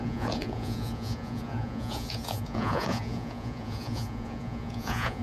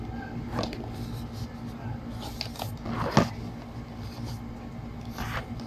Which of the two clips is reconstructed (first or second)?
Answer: first